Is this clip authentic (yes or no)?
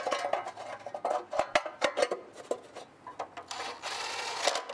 yes